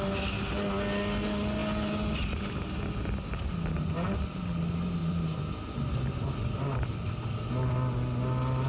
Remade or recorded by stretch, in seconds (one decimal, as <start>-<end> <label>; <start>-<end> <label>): 0.0-5.0 recorded; 5.0-7.5 remade; 7.5-8.7 recorded